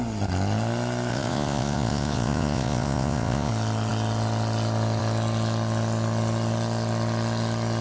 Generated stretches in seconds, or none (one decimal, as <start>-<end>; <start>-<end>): 1.1-3.5